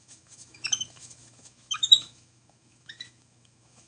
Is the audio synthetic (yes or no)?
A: yes